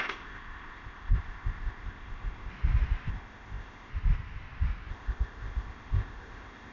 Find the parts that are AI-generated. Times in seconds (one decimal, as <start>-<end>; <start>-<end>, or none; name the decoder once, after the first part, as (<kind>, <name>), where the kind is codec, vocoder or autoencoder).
0.0-2.5 (codec, ZipCodec); 3.1-3.9; 4.9-6.7